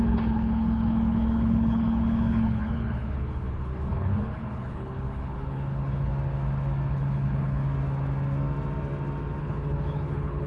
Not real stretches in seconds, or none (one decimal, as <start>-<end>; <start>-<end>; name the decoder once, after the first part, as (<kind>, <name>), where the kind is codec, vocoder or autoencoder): 0.0-6.1 (codec, HILCodec); 6.9-7.6; 9.4-10.5